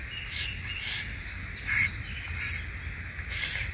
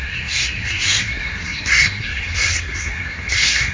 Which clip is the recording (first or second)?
first